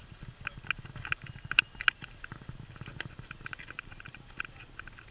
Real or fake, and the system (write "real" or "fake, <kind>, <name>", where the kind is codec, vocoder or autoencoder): real